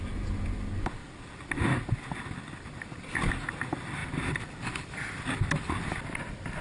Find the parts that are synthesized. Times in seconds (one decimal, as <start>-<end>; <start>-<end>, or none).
none